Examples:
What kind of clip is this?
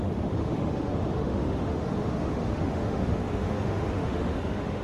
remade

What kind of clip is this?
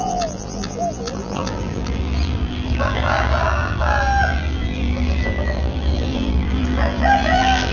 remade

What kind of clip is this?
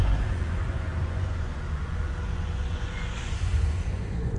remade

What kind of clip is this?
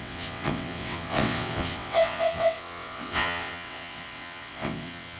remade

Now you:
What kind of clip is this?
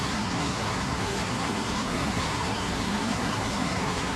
remade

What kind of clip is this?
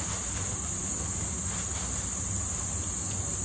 recorded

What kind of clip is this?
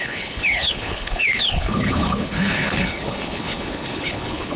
remade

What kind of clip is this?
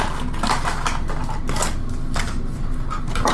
recorded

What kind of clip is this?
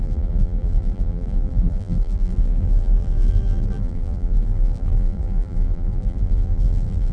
remade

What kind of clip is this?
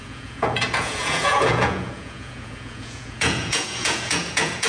remade